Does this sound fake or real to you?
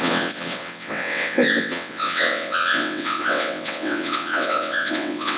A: fake